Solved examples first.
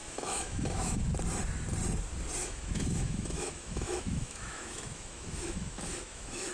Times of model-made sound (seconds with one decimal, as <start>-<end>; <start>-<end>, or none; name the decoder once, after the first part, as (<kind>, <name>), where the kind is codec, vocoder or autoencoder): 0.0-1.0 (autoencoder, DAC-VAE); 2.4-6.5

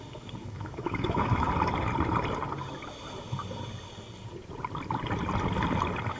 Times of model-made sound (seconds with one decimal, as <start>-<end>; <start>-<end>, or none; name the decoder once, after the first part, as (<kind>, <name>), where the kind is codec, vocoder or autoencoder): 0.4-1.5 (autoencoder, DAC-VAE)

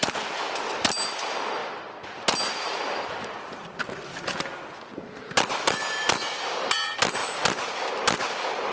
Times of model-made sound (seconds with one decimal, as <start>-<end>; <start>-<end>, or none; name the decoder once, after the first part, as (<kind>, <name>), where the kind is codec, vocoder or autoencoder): none